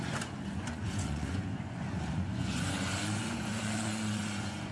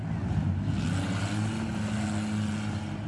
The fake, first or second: first